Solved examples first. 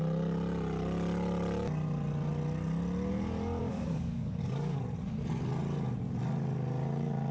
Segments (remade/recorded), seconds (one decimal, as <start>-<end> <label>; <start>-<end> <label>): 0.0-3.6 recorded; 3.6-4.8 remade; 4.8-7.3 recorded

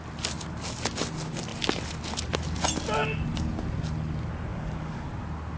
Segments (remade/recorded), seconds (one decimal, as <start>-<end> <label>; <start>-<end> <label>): 0.0-4.5 recorded; 4.5-5.1 remade; 5.1-5.6 recorded

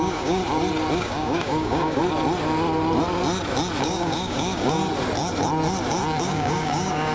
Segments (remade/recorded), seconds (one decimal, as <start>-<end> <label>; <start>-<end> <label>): 0.0-0.4 remade; 0.4-0.9 recorded; 0.9-2.0 remade; 2.0-3.8 recorded; 3.8-4.8 remade; 4.8-6.2 recorded; 6.2-7.1 remade